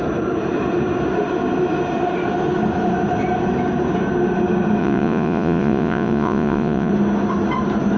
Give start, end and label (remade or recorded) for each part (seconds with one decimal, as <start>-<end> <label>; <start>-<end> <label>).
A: 0.0-4.8 recorded; 4.8-6.9 remade; 6.9-8.0 recorded